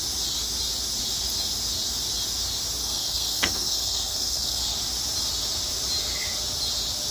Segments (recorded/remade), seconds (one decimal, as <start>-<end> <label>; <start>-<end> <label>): 0.0-2.8 recorded; 2.8-4.6 remade; 4.6-7.1 recorded